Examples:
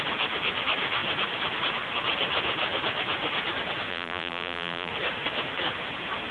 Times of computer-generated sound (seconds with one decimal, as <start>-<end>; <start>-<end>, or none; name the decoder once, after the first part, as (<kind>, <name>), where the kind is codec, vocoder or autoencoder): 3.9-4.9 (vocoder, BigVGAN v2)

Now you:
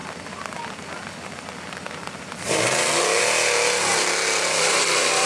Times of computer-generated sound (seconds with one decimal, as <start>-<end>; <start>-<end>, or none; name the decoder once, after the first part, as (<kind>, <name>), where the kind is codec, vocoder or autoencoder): 3.9-5.3 (vocoder, BigVGAN v2)

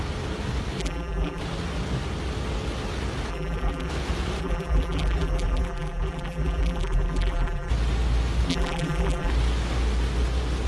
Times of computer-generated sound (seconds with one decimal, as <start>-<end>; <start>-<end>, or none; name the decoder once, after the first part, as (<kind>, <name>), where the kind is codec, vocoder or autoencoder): 0.8-1.4 (vocoder, BigVGAN v2); 3.3-3.9; 4.4-7.7; 8.5-9.3

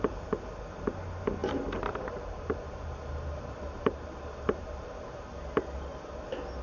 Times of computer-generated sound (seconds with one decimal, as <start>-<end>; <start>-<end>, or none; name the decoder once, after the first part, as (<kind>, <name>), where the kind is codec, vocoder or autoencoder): 1.4-5.4 (vocoder, BigVGAN v2)

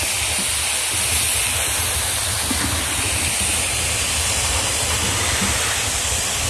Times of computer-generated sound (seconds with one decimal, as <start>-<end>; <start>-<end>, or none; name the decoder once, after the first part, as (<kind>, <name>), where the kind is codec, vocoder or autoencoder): none

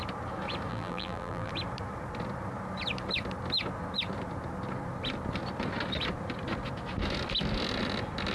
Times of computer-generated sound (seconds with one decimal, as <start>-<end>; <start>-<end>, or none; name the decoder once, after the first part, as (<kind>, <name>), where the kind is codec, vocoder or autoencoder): 0.7-1.5 (vocoder, BigVGAN v2)

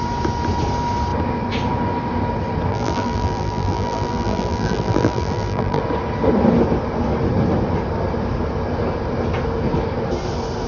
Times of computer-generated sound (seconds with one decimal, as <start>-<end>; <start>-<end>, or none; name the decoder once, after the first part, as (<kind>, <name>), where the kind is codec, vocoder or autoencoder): 2.7-5.8 (vocoder, BigVGAN v2)